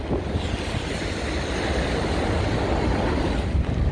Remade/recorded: recorded